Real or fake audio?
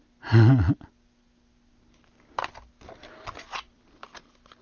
real